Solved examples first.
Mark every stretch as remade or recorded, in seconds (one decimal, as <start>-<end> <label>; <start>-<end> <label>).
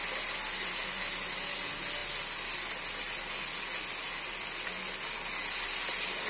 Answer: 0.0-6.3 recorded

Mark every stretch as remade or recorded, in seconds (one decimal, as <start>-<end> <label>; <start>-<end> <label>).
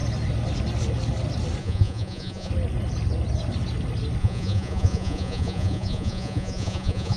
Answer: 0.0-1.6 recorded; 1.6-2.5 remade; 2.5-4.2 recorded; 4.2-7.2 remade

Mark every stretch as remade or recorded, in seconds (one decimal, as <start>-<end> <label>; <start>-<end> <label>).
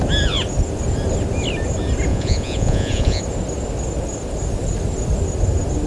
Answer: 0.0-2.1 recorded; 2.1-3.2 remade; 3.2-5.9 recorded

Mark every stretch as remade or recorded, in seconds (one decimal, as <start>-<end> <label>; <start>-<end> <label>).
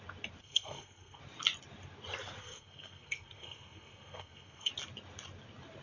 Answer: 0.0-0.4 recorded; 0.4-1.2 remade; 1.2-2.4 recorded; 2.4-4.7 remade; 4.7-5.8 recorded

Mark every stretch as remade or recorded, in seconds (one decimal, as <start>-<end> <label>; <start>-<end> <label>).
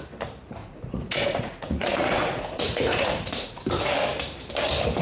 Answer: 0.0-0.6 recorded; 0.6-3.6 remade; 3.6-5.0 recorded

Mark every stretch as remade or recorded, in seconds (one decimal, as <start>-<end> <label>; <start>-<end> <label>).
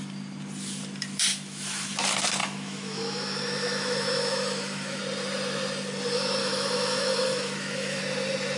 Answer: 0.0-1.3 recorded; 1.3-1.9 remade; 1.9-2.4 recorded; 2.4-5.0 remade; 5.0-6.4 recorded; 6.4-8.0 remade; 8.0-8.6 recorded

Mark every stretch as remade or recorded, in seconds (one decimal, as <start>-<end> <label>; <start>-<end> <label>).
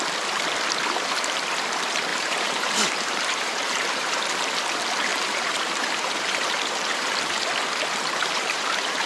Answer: 0.0-2.1 recorded; 2.1-4.2 remade; 4.2-5.1 recorded; 5.1-7.4 remade; 7.4-8.2 recorded; 8.2-9.1 remade